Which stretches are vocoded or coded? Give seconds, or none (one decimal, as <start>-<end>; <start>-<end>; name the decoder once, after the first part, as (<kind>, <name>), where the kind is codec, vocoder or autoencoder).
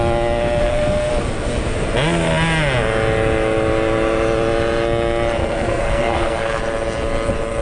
0.6-1.1 (codec, SNAC); 5.4-6.6